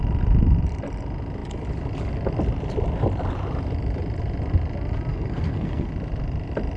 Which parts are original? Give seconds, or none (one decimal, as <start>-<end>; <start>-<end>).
0.0-5.1; 5.9-6.8